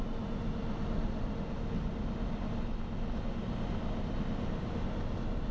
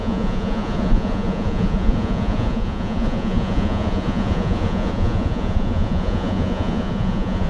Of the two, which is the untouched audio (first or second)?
first